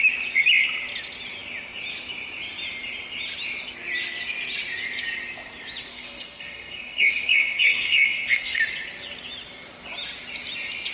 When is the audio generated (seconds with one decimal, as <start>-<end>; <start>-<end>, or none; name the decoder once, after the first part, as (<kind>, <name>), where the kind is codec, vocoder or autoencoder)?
5.9-8.6 (codec, SNAC)